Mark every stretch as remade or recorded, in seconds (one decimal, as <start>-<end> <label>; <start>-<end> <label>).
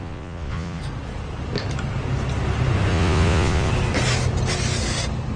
0.0-0.8 remade; 0.8-2.9 recorded; 2.9-3.7 remade; 3.7-5.4 recorded